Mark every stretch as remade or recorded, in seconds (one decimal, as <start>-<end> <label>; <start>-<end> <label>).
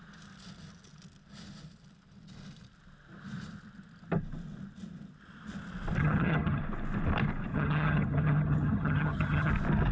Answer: 0.0-6.0 recorded; 6.0-6.6 remade; 6.6-7.5 recorded; 7.5-9.5 remade; 9.5-9.9 recorded